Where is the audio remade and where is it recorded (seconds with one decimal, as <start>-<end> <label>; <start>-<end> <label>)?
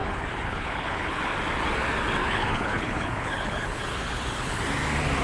0.0-1.2 remade; 1.2-2.2 recorded; 2.2-4.6 remade; 4.6-5.2 recorded